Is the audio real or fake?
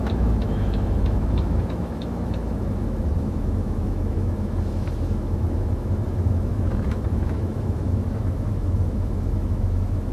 fake